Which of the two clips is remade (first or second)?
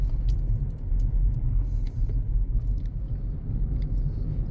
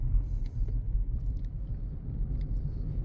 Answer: second